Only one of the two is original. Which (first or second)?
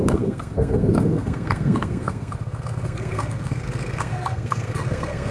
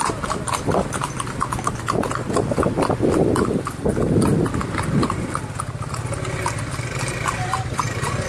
second